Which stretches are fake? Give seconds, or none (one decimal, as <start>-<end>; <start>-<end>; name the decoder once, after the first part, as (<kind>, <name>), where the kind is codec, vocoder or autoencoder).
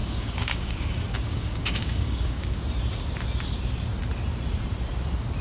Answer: 0.0-2.6 (codec, DAC)